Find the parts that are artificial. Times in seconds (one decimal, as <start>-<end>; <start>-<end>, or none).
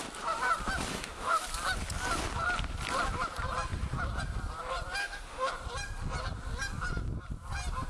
0.9-1.4; 5.0-5.5